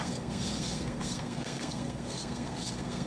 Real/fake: fake